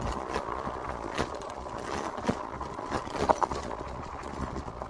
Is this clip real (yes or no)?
no